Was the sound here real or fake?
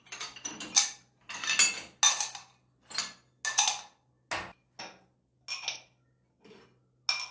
real